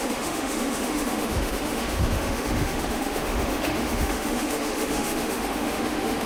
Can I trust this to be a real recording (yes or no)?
no